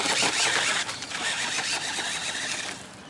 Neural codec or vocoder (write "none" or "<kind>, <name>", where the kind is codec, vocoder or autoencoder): none